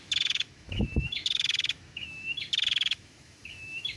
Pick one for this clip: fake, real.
fake